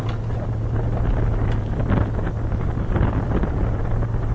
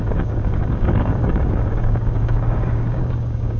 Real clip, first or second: first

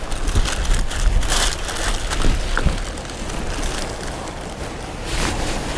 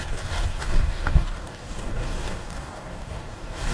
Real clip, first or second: first